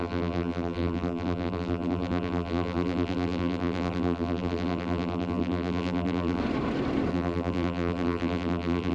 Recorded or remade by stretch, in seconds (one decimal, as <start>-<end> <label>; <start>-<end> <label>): 0.0-6.4 remade; 6.4-7.1 recorded; 7.1-8.9 remade